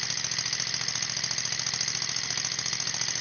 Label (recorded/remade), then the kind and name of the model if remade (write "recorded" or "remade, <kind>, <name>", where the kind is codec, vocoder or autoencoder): recorded